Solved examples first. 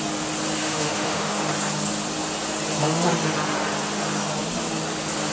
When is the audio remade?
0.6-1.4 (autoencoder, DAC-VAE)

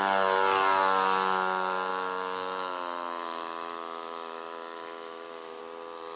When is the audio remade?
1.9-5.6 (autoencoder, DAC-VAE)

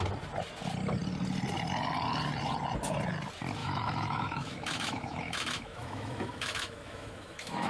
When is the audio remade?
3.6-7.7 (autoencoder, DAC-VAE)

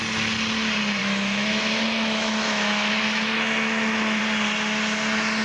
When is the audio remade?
1.0-4.2 (autoencoder, DAC-VAE)

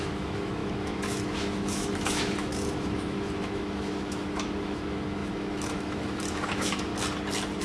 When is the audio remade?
0.0-6.9 (autoencoder, DAC-VAE)

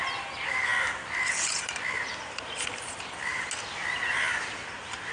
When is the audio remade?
none